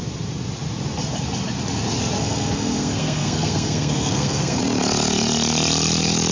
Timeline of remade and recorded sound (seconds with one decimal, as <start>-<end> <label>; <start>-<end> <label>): 0.0-2.2 recorded; 2.2-4.6 remade; 4.6-6.3 recorded